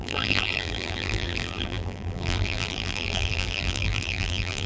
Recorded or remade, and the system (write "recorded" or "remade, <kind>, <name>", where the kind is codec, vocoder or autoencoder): remade, vocoder, BigVGAN v2